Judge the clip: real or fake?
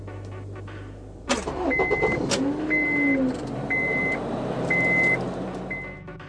real